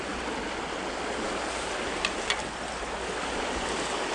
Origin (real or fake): real